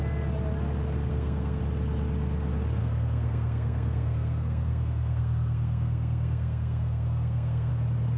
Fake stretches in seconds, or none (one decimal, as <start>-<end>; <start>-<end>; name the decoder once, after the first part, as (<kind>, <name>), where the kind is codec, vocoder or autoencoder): 1.1-1.6 (codec, SNAC); 2.8-7.7